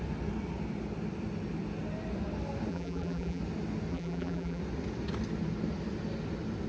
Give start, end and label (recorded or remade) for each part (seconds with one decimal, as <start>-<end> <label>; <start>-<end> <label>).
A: 0.0-2.7 recorded; 2.7-3.4 remade; 3.4-3.9 recorded; 3.9-4.6 remade; 4.6-6.7 recorded

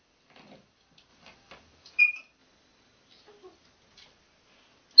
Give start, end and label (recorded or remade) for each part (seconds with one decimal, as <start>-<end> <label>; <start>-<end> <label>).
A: 0.0-2.4 remade; 2.4-5.0 recorded

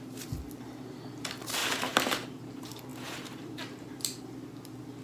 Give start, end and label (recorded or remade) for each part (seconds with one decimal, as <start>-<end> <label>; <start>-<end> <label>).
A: 0.0-1.6 recorded; 1.6-2.4 remade; 2.4-2.9 recorded; 2.9-4.2 remade; 4.2-5.0 recorded

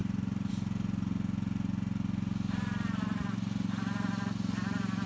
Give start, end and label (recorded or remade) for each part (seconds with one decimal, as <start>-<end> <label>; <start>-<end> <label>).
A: 0.0-0.5 remade; 0.5-5.1 recorded

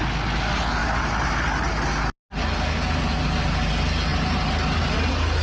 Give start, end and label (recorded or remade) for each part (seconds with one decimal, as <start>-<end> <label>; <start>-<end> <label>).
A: 0.0-5.4 recorded

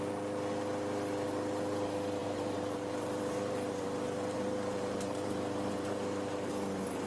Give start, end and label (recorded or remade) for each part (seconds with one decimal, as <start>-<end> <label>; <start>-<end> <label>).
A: 0.0-2.2 recorded; 2.2-6.5 remade; 6.5-7.1 recorded

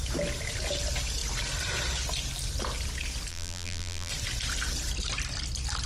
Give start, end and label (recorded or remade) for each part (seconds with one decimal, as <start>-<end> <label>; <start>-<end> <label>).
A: 0.0-3.3 recorded; 3.3-4.1 remade; 4.1-5.9 recorded